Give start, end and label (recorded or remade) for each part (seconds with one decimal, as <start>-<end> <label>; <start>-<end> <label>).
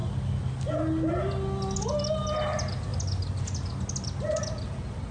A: 0.0-5.1 recorded